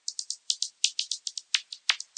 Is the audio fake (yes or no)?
no